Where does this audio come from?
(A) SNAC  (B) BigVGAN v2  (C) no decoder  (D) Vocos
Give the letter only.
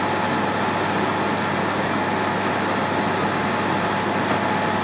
C